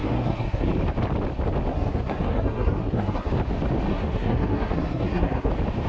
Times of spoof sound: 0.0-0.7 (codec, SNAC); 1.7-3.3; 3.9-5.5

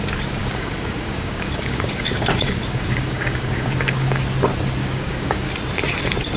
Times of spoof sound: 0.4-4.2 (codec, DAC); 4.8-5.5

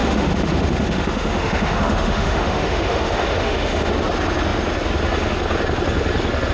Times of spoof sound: 0.0-3.9 (autoencoder, DAC-VAE)

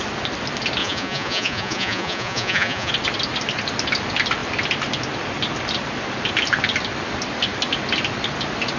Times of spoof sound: 0.8-2.9 (vocoder, Vocos)

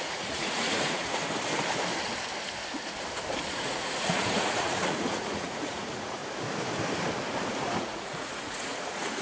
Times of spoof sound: 0.0-1.2 (vocoder, Vocos); 3.5-6.2; 7.8-9.2

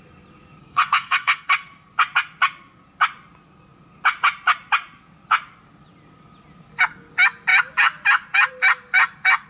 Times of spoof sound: 0.6-1.5 (codec, SNAC)

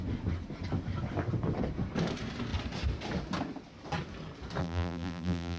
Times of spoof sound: 4.6-5.6 (vocoder, BigVGAN v2)

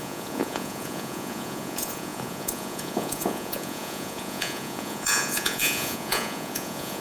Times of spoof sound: 0.0-7.0 (vocoder, Vocos)